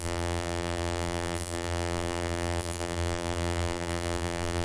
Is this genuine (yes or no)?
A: no